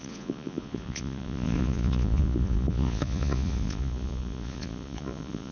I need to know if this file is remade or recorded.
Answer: remade